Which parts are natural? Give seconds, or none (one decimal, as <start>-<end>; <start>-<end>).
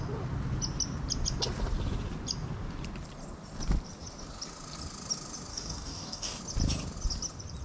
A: 0.0-5.5; 6.4-7.6